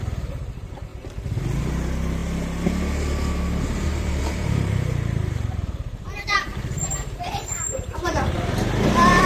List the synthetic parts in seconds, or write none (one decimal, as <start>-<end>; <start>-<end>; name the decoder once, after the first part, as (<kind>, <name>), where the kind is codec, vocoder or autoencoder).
0.0-0.9 (vocoder, BigVGAN v2); 1.6-2.2; 3.7-9.3